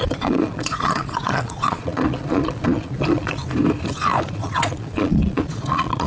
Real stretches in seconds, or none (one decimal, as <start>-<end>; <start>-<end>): 3.4-4.2